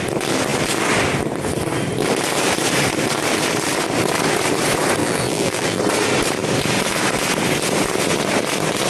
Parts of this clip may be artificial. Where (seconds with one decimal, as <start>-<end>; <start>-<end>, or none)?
5.0-5.8